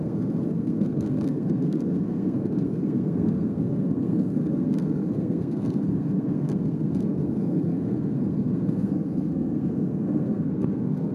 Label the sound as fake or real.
fake